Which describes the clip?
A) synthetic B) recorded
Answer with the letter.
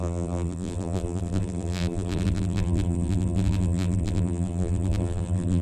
A